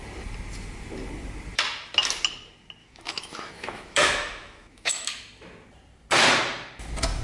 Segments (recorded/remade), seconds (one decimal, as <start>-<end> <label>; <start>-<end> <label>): 0.0-2.8 recorded; 2.8-5.1 remade; 5.1-7.2 recorded